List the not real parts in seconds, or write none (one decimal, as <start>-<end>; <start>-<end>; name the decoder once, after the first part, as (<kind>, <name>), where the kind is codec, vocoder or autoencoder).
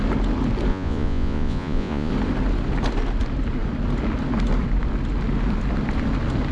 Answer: 0.7-2.1 (vocoder, Vocos)